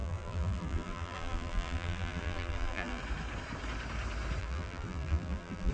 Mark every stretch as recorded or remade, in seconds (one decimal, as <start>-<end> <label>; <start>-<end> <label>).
0.0-3.0 remade; 3.0-4.4 recorded; 4.4-5.7 remade

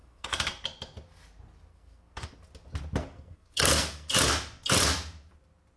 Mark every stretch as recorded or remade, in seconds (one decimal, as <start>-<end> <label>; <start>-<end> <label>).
0.0-0.6 remade; 0.6-1.7 recorded; 1.7-2.3 remade; 2.3-3.0 recorded; 3.0-4.1 remade; 4.1-5.8 recorded

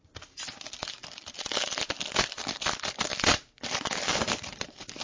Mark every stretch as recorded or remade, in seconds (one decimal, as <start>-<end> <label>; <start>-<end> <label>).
0.0-0.8 recorded; 0.8-1.4 remade; 1.4-3.1 recorded; 3.1-5.0 remade

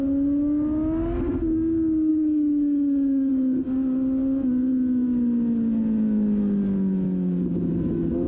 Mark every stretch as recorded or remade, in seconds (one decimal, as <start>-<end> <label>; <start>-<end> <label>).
0.0-2.1 recorded; 2.1-3.3 remade; 3.3-8.3 recorded

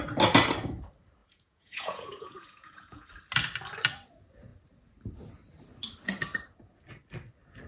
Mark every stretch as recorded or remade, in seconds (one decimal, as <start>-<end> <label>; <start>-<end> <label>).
0.0-1.2 recorded; 1.2-3.1 remade; 3.1-7.7 recorded

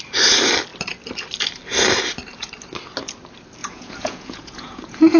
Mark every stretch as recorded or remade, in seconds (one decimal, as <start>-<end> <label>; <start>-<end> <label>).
0.0-3.6 recorded; 3.6-5.2 remade

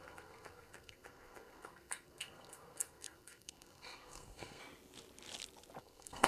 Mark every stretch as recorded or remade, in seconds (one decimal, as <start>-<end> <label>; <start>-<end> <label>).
0.0-4.6 remade; 4.6-5.8 recorded; 5.8-6.3 remade